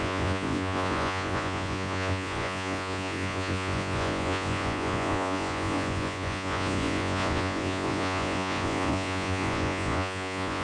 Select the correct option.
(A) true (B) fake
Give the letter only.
B